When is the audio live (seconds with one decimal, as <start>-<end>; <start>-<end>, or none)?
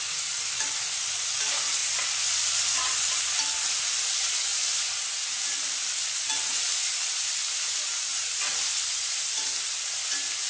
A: 0.0-10.5